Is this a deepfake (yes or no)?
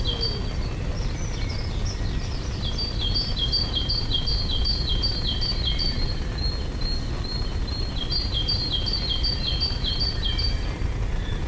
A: no